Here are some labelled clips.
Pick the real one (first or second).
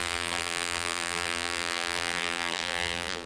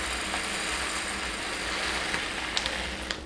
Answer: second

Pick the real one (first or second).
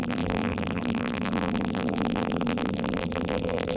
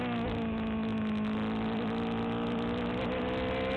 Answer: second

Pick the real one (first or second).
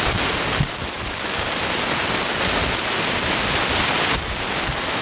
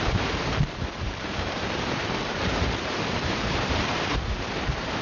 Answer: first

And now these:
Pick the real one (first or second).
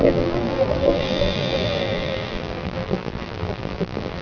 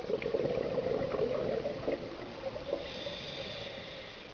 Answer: second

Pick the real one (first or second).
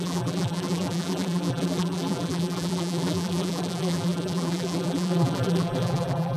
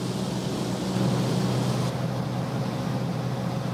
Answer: second